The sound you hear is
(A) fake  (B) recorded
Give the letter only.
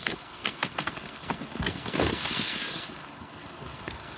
A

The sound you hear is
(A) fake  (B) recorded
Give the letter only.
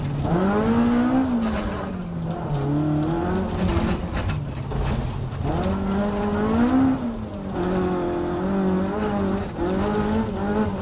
B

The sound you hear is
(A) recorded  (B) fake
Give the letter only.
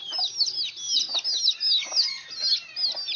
A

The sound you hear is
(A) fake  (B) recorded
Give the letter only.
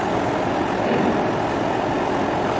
B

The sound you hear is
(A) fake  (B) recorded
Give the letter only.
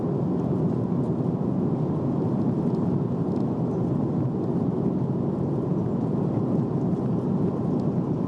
B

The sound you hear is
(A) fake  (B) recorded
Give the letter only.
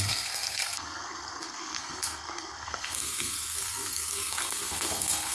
A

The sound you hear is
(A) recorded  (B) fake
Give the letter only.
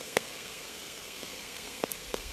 B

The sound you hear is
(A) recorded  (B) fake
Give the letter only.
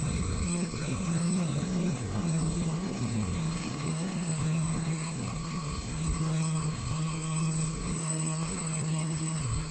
B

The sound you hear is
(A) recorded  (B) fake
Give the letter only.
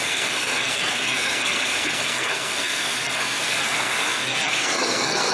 B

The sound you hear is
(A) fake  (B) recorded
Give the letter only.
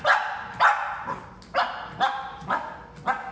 B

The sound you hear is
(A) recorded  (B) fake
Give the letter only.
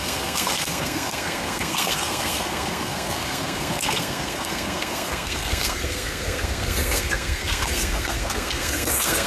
B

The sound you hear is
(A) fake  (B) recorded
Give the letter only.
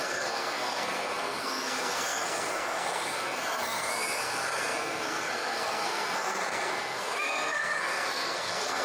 A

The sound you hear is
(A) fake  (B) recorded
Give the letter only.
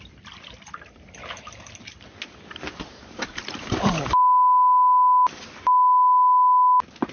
B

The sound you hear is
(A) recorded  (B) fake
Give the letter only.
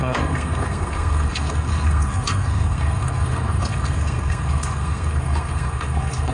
B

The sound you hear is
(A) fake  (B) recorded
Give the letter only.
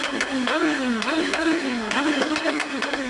A